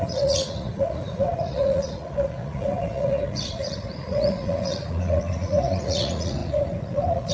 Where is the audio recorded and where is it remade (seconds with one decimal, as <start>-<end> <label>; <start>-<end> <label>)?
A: 0.0-7.3 remade